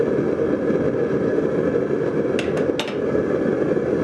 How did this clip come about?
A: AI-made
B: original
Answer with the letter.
B